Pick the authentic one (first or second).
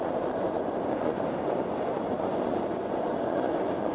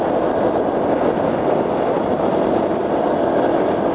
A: second